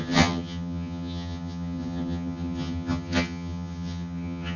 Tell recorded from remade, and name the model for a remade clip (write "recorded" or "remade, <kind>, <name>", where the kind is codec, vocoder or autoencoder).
remade, vocoder, HiFi-GAN